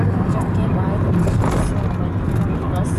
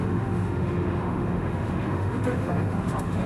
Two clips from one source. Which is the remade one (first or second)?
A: second